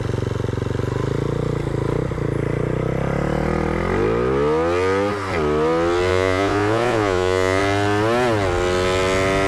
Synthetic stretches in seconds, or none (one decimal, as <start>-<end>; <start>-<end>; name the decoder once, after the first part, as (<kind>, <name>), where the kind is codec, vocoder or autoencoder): 6.1-7.6 (vocoder, Vocos)